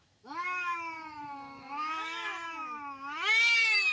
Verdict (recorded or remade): remade